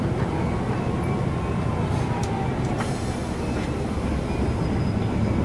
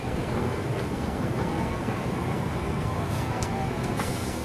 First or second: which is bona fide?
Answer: first